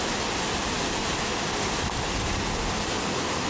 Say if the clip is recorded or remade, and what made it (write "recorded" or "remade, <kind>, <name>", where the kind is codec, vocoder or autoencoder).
recorded